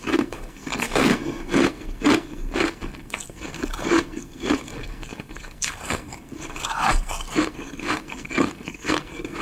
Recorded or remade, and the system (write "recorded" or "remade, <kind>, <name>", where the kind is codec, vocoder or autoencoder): remade, codec, SNAC